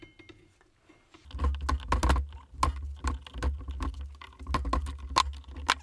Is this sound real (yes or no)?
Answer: yes